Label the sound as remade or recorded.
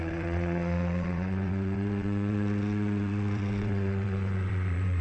remade